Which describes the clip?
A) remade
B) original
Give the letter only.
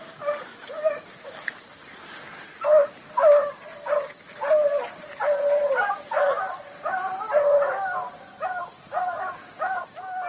B